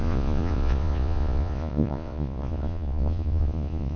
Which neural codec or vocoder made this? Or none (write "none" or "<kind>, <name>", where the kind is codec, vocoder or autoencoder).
vocoder, Vocos